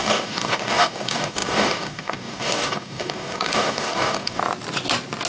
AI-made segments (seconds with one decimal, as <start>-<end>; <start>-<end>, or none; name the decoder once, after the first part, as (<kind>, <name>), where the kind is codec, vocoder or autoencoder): 0.0-4.4 (codec, DAC)